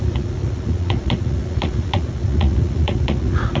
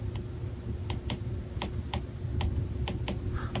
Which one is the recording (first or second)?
second